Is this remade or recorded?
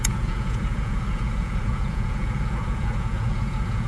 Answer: remade